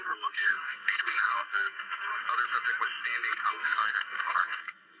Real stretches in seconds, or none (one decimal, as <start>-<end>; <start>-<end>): 2.1-3.5